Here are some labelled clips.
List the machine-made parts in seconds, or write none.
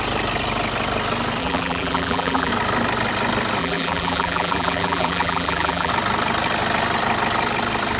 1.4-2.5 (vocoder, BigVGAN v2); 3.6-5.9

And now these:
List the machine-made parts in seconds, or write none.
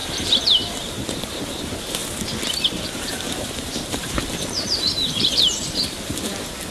0.0-2.0 (vocoder, BigVGAN v2); 3.1-6.7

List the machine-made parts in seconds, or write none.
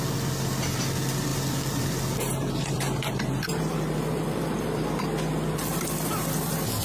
1.3-5.0 (vocoder, BigVGAN v2)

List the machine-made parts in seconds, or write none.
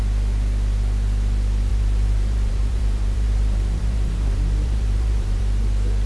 1.7-5.4 (vocoder, BigVGAN v2)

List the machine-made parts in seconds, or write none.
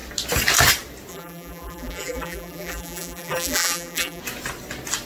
1.1-4.2 (vocoder, BigVGAN v2)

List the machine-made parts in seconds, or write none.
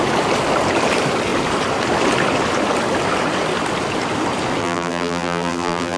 4.6-6.0 (vocoder, BigVGAN v2)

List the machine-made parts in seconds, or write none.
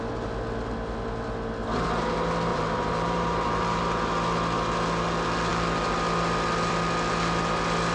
2.5-3.8 (vocoder, BigVGAN v2)